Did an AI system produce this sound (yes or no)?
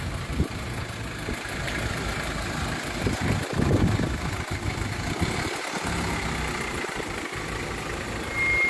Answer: no